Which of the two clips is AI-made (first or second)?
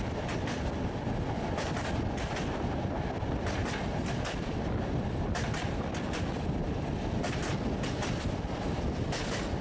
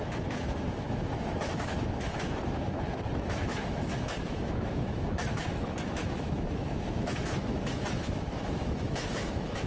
second